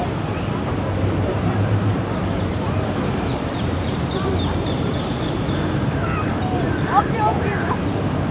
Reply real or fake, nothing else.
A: fake